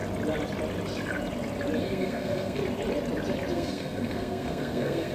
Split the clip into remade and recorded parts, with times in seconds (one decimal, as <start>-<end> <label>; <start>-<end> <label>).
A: 0.0-1.8 recorded; 1.8-2.6 remade; 2.6-3.5 recorded; 3.5-5.1 remade

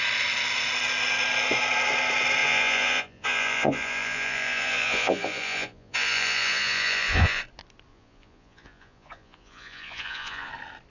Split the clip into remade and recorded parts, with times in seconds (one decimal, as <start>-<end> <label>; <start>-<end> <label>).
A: 0.0-2.4 recorded; 2.4-7.4 remade; 7.4-7.9 recorded; 7.9-10.5 remade; 10.5-10.9 recorded

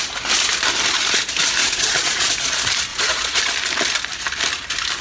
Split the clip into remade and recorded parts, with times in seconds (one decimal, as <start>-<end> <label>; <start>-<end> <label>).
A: 0.0-1.6 recorded; 1.6-2.3 remade; 2.3-2.9 recorded; 2.9-3.4 remade; 3.4-5.0 recorded

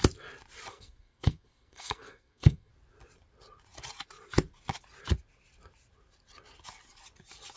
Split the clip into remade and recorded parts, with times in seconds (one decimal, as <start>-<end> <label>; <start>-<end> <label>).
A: 0.0-0.7 recorded; 0.7-2.7 remade; 2.7-7.6 recorded

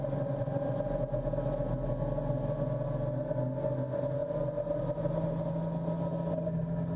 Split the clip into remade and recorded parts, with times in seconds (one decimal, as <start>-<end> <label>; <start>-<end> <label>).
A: 0.0-7.0 recorded

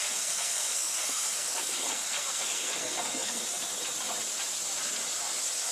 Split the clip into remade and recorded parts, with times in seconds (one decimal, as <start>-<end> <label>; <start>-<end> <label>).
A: 0.0-3.4 remade; 3.4-5.7 recorded

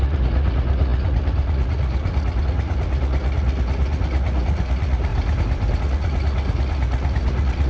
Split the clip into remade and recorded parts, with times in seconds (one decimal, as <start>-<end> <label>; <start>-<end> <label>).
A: 0.0-5.1 remade; 5.1-5.8 recorded; 5.8-7.7 remade